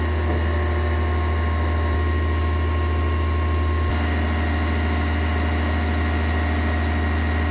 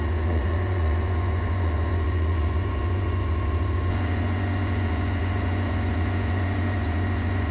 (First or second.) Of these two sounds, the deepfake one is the second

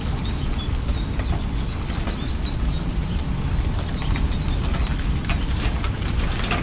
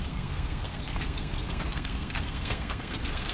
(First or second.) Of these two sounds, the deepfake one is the second